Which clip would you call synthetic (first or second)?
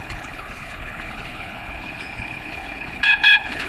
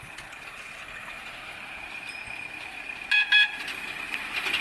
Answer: first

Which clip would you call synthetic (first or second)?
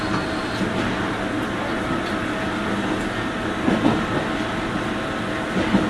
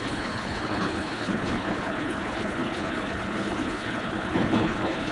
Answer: second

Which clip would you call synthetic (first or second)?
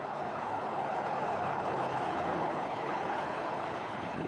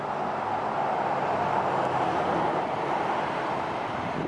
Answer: first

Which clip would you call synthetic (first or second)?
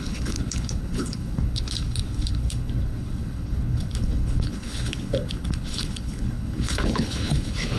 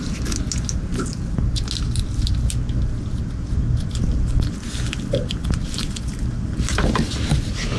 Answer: first